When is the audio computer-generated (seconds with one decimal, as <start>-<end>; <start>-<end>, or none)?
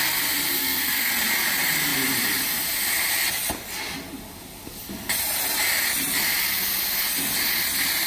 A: 0.6-1.1